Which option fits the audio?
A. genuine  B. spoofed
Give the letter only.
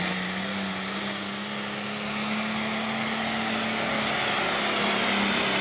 A